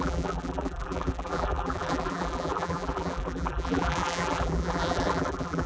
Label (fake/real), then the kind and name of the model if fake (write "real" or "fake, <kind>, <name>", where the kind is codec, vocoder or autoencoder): fake, vocoder, BigVGAN v2